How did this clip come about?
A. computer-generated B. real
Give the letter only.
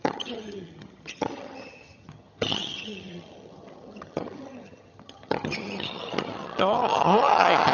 A